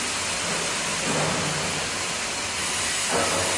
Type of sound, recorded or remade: recorded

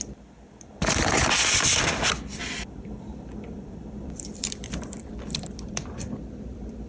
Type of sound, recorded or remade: remade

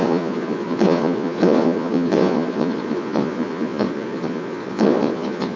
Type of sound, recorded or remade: remade